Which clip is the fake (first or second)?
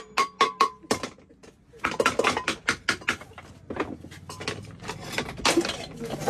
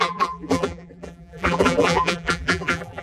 second